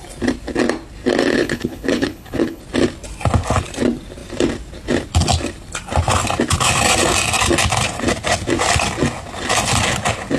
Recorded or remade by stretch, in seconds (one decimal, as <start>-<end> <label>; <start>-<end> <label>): 0.0-1.3 recorded; 1.3-2.6 remade; 2.6-10.4 recorded